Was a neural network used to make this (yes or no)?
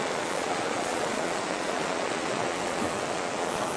yes